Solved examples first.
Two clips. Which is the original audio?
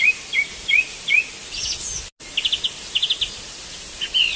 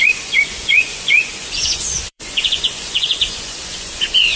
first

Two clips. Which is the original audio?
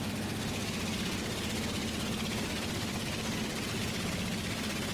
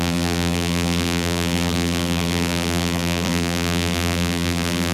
first